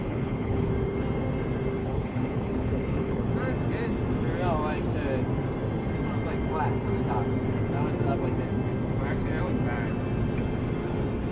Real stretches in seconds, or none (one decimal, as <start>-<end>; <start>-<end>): 0.7-1.8; 3.3-11.3